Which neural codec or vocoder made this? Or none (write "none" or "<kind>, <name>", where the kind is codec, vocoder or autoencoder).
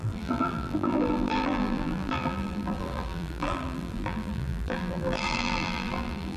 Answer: vocoder, BigVGAN v2